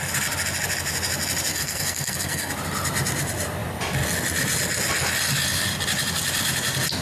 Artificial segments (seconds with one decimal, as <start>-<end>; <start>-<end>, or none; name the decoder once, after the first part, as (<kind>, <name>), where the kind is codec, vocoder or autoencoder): 1.5-2.5 (codec, SNAC)